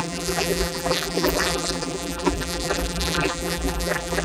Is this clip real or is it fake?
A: fake